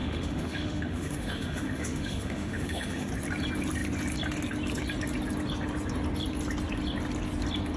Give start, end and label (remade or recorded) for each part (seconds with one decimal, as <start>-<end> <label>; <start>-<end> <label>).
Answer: 0.0-3.1 remade; 3.1-7.8 recorded